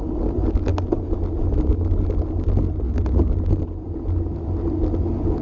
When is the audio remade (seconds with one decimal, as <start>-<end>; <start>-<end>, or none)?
none